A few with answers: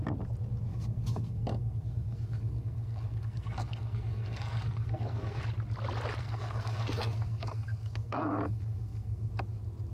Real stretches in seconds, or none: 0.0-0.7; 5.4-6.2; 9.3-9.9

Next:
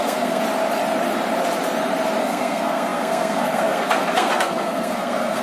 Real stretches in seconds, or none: 0.4-2.2

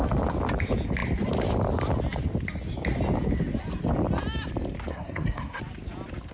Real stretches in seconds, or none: 0.0-4.9; 5.6-6.3

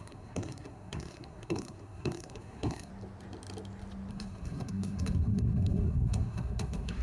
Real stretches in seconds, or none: 2.9-4.1

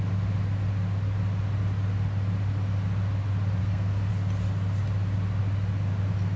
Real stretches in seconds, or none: 0.0-3.6; 4.1-6.4

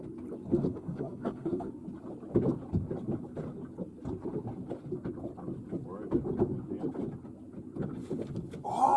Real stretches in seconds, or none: 0.0-0.5; 1.7-9.0